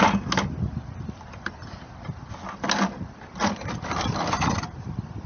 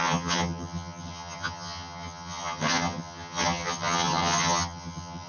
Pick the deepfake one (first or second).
second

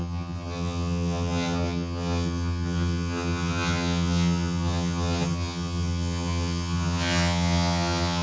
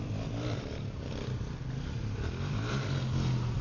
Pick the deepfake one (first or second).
first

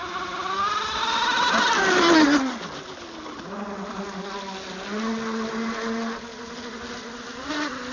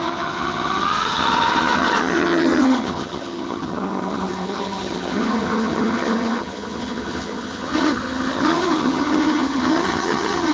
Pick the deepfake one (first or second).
second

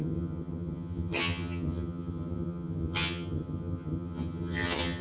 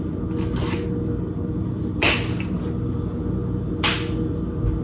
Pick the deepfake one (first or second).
first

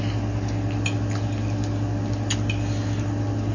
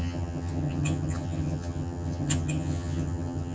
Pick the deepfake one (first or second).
second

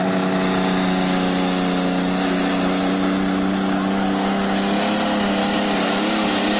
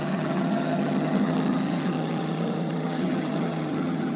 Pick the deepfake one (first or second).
second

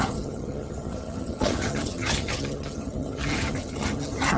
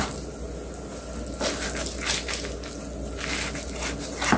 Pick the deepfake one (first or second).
first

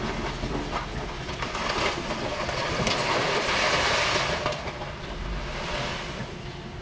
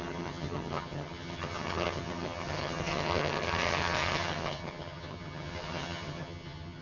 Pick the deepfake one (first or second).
second